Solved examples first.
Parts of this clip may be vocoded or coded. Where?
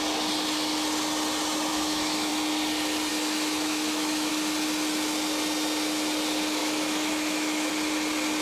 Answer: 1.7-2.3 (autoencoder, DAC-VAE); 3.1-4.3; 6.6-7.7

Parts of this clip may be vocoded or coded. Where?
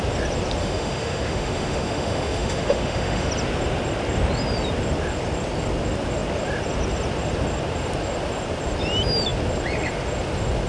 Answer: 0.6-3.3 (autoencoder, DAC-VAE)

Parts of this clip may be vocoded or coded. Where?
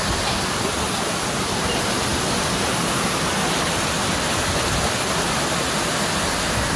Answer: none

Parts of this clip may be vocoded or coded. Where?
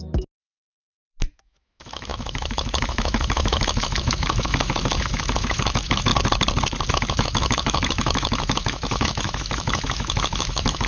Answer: 0.0-6.1 (autoencoder, DAC-VAE); 6.9-10.9